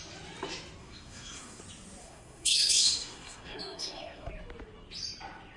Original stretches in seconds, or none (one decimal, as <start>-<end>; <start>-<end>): 0.0-0.8; 1.6-2.0; 4.3-5.6